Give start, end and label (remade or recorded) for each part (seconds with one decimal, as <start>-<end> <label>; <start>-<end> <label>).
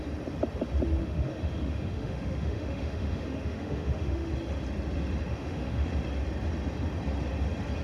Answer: 0.0-1.0 recorded; 1.0-4.3 remade; 4.3-5.3 recorded; 5.3-5.9 remade; 5.9-7.8 recorded